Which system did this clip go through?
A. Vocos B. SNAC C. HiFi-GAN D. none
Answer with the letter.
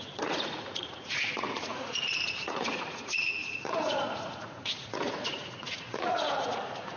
A